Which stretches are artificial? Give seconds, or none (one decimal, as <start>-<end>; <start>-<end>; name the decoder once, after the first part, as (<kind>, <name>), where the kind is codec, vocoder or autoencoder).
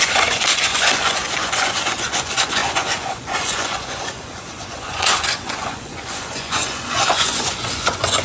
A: 0.0-8.2 (vocoder, Vocos)